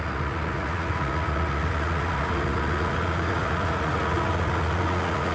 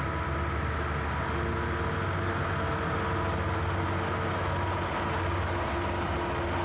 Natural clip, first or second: second